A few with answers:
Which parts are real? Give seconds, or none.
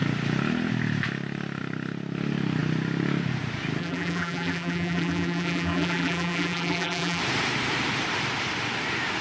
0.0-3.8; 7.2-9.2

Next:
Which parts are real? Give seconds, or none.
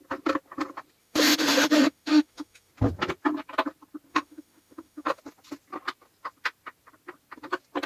0.0-1.0; 2.7-4.1; 5.2-7.9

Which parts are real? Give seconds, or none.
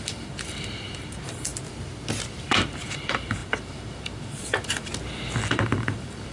1.5-2.3; 4.9-5.5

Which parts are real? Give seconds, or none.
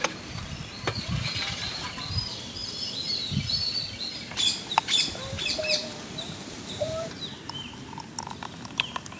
none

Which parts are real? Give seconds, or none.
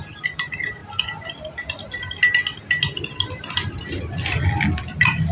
0.0-5.3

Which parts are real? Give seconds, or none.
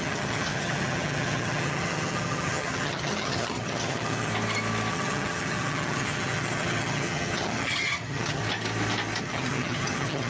4.3-4.9; 8.4-9.2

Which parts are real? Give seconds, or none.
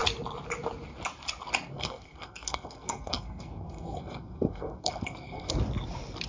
0.0-1.7; 5.5-6.3